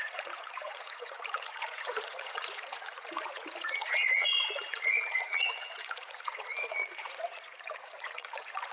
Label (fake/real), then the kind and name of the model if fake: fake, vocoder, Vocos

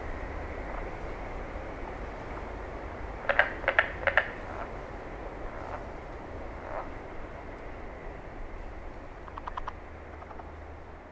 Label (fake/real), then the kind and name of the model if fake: real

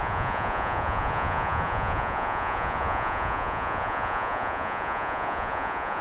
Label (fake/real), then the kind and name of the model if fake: fake, vocoder, Vocos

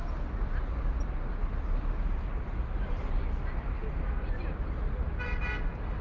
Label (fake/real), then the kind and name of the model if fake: real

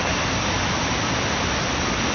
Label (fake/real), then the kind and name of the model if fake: real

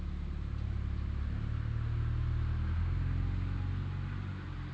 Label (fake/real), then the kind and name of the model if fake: real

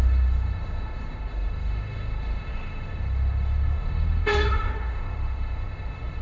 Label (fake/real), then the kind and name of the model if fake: fake, autoencoder, DAC-VAE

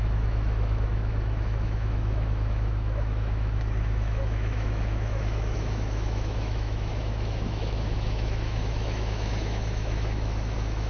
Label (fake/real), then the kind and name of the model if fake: fake, autoencoder, DAC-VAE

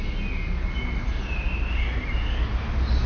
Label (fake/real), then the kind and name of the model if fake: real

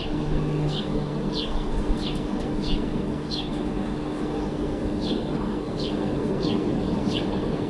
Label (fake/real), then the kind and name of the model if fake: fake, codec, SNAC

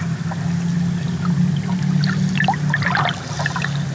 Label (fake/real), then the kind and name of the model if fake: real